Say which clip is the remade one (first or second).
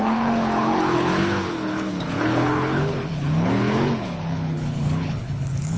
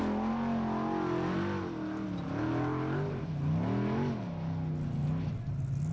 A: first